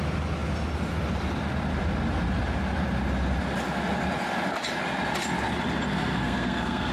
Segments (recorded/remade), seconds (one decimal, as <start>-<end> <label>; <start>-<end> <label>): 0.0-5.9 recorded; 5.9-6.9 remade